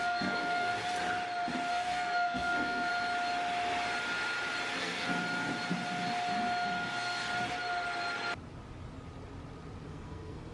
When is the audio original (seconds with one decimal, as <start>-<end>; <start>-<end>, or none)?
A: 0.7-1.7; 2.9-4.8; 5.2-9.9